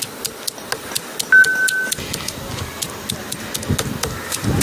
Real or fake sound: real